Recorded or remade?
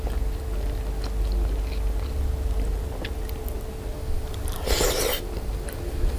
recorded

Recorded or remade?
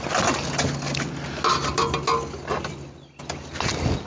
recorded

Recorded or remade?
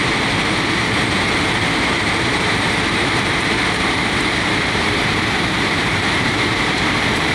remade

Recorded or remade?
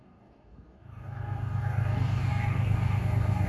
remade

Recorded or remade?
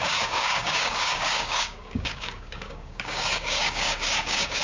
remade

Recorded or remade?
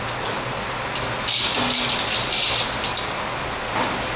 recorded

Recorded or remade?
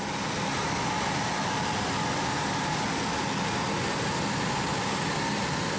recorded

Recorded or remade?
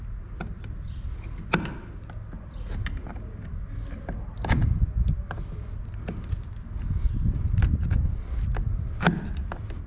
recorded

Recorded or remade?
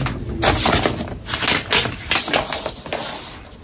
recorded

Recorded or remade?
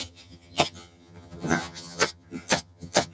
remade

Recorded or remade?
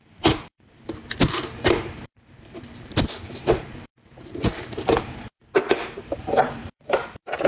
remade